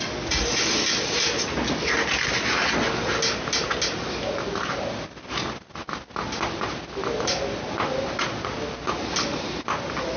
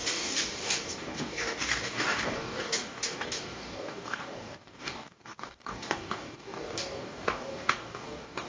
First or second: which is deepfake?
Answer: second